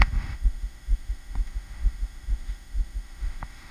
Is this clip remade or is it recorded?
remade